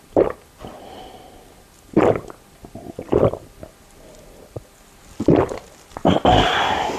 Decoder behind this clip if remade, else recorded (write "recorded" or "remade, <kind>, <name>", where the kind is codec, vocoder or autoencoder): recorded